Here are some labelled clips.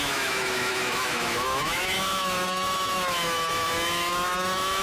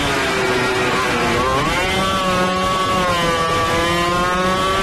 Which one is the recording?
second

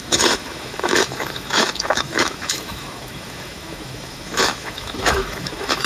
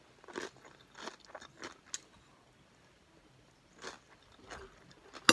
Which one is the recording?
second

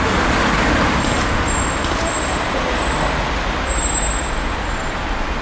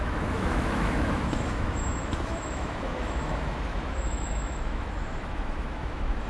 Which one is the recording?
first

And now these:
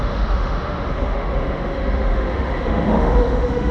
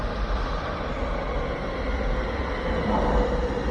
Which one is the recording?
second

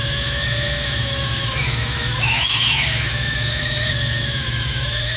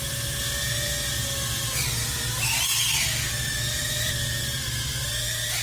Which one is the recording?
second